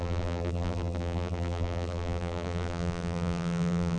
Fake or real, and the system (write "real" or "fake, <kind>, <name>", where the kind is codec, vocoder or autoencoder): fake, vocoder, BigVGAN v2